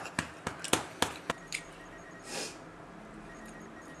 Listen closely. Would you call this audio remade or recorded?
recorded